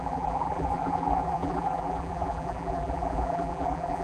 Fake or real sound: fake